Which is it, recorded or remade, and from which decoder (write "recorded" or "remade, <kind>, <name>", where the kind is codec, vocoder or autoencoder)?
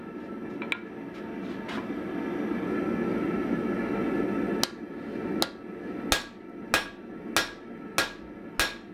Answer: recorded